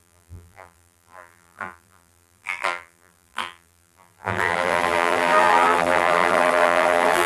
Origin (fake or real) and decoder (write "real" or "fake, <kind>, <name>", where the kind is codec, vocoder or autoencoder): fake, vocoder, BigVGAN v2